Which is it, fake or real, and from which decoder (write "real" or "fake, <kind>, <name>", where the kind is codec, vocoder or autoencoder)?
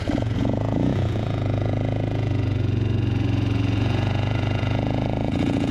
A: fake, vocoder, Vocos